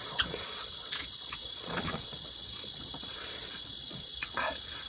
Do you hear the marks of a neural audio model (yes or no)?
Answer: yes